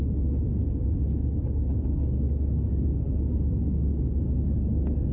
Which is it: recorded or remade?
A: recorded